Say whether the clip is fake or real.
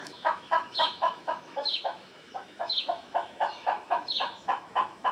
fake